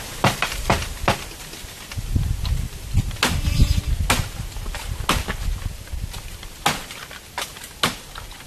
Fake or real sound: real